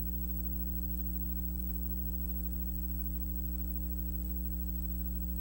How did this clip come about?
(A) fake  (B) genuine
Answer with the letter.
B